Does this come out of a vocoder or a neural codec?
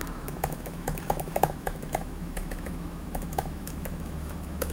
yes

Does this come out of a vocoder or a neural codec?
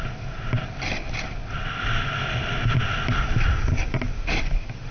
no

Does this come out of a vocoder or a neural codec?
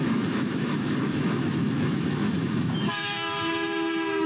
yes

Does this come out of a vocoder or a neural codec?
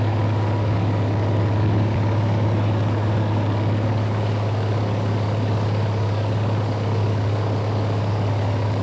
yes